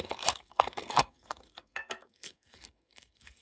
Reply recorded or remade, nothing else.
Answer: remade